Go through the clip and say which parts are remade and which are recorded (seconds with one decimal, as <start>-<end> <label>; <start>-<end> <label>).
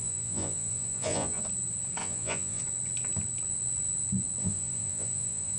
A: 0.0-1.4 remade; 1.4-2.0 recorded; 2.0-2.6 remade; 2.6-4.4 recorded; 4.4-5.6 remade